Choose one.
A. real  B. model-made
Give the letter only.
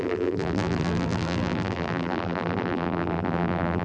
B